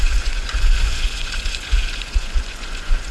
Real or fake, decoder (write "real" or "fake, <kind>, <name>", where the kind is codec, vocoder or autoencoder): fake, vocoder, Vocos